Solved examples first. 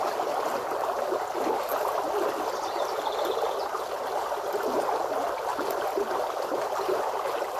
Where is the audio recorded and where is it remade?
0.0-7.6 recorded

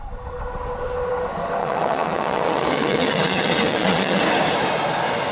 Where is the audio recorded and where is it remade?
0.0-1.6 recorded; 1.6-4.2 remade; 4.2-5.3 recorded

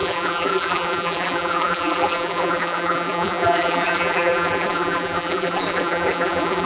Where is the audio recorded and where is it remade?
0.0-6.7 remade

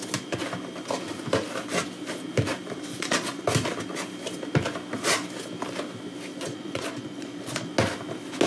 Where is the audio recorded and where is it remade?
0.0-2.9 recorded; 2.9-3.4 remade; 3.4-6.3 recorded; 6.3-7.7 remade; 7.7-8.5 recorded